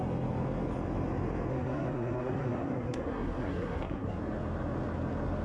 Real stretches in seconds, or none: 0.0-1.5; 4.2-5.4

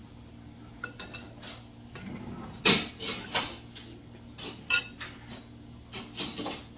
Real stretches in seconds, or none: 0.0-6.8